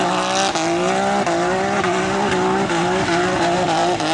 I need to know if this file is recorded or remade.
recorded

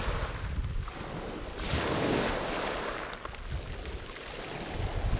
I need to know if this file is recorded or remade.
recorded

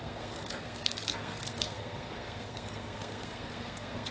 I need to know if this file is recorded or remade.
remade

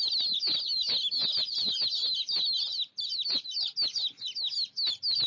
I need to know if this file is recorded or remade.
recorded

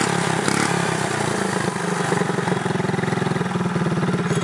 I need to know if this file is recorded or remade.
recorded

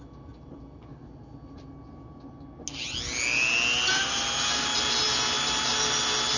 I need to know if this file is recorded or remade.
recorded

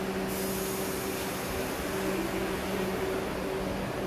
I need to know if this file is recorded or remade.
recorded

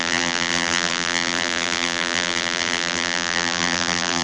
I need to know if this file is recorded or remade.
remade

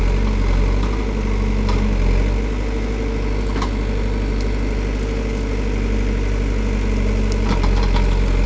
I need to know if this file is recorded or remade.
recorded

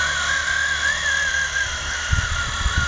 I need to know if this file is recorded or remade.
recorded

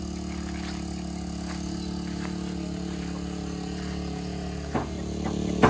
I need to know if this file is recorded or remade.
recorded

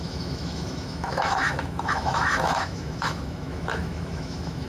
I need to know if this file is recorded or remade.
remade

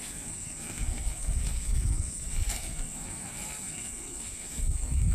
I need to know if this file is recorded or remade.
remade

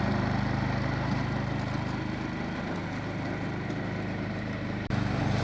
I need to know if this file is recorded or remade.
remade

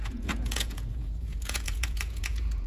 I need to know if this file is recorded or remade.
remade